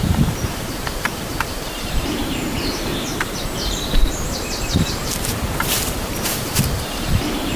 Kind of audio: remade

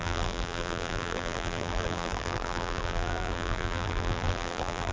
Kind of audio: remade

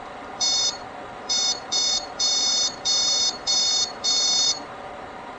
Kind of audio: remade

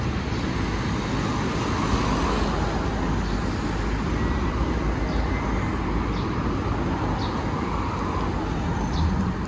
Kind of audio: recorded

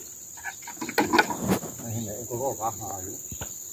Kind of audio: recorded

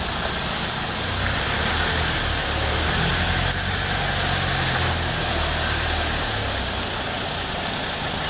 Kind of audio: recorded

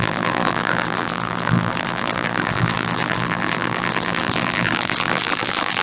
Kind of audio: remade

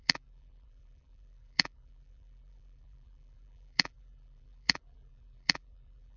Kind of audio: remade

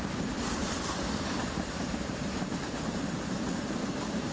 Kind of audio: remade